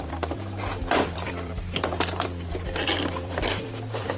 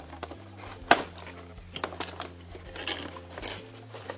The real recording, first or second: second